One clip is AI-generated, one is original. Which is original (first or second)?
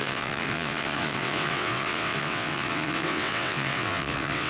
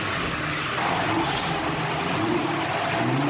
second